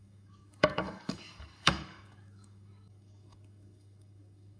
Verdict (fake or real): fake